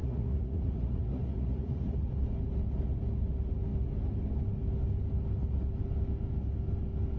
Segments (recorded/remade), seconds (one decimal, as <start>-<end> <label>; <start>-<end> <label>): 0.0-2.1 remade; 2.1-7.2 recorded